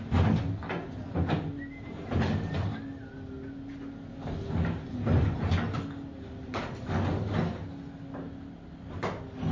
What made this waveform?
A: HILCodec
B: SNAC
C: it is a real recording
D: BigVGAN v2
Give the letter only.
C